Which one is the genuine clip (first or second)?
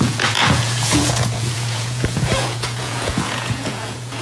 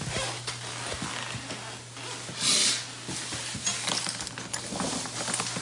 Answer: second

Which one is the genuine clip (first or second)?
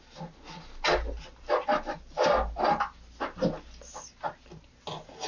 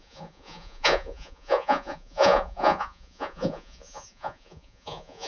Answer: first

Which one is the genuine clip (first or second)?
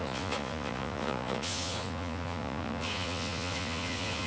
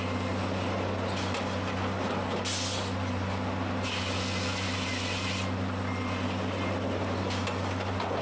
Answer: second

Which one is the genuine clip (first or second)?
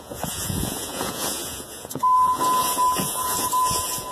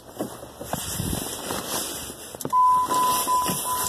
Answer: second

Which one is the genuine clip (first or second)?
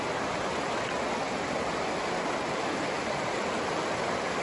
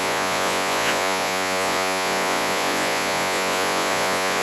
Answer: first